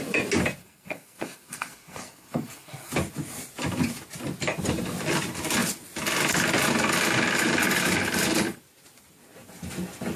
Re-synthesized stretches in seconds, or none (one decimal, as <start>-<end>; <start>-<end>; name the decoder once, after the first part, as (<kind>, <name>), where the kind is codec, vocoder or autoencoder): 0.6-2.9 (codec, SNAC)